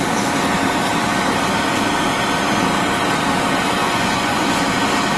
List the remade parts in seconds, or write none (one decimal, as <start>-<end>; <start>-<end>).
3.8-4.6